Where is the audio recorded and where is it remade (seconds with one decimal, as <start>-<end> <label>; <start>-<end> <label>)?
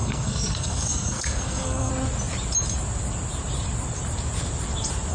0.0-1.9 remade; 1.9-5.1 recorded